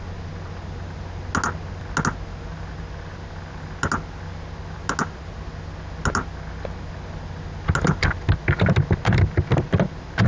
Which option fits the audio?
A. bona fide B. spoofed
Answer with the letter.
A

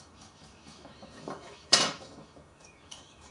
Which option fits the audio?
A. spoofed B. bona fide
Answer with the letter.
A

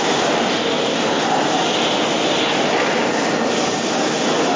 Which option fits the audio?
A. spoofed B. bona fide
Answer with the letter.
B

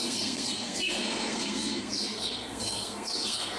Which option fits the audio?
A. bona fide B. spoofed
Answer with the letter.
B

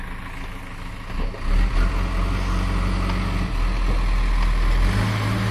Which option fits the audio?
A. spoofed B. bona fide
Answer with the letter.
B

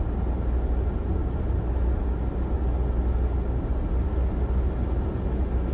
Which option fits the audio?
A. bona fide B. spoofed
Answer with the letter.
A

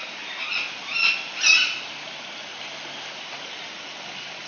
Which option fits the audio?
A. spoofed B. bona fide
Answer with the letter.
B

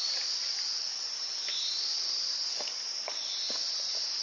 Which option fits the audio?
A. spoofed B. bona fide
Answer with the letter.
B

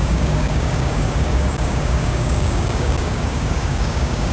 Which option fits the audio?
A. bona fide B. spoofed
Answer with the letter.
B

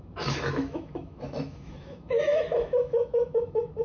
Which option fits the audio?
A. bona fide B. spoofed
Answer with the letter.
B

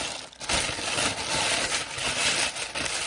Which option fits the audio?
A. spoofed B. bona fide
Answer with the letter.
B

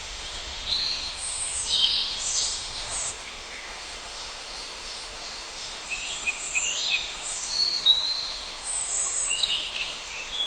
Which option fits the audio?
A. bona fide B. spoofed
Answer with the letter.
B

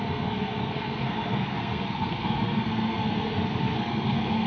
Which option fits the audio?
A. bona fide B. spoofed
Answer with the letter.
B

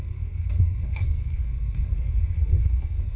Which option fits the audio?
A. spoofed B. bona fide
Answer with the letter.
A